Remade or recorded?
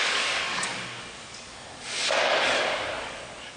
remade